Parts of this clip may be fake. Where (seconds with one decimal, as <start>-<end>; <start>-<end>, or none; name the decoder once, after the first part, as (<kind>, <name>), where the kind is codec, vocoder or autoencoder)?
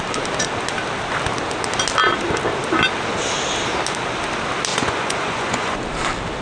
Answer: 4.7-5.8 (vocoder, Vocos)